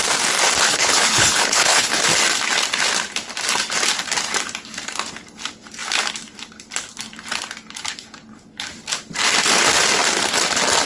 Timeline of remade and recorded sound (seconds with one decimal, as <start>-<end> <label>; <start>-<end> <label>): 0.0-0.7 recorded; 0.7-2.0 remade; 2.0-10.8 recorded